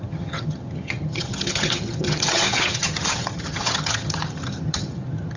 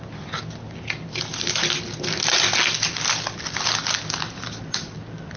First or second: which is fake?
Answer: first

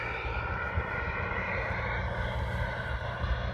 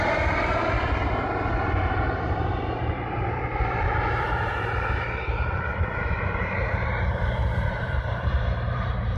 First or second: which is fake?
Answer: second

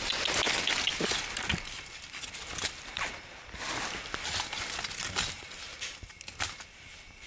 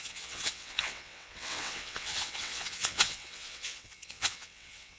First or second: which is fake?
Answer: second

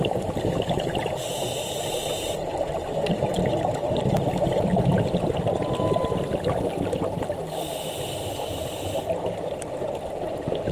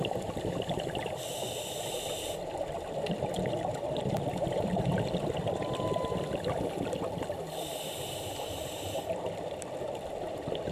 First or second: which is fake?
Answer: second